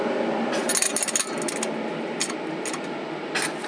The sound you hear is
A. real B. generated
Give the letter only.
A